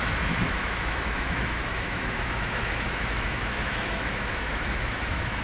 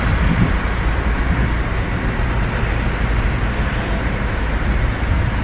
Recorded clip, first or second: second